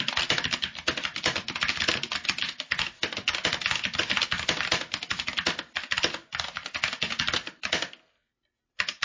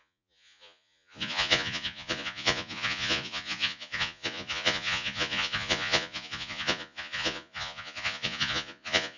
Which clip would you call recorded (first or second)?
first